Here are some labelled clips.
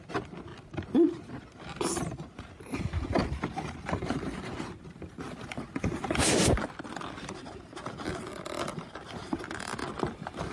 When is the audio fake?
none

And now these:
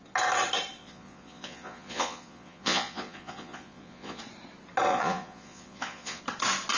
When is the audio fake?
0.8-4.2 (vocoder, Vocos); 4.9-6.2

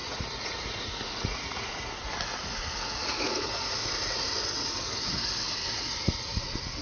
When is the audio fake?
0.0-1.9 (vocoder, Vocos); 2.3-6.8

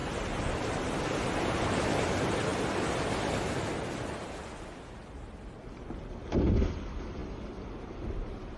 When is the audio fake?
none

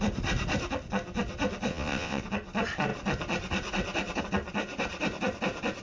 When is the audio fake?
1.7-2.2 (vocoder, WaveNeXt)

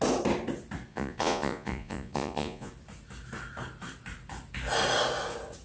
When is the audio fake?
0.9-2.7 (vocoder, Vocos)